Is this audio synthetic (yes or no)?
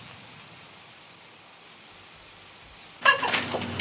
no